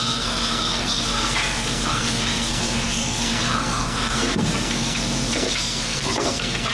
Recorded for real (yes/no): no